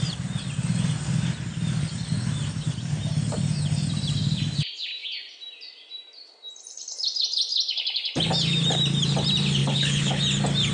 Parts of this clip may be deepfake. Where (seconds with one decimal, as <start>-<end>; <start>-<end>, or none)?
9.6-10.2